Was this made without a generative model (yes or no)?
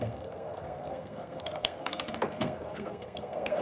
no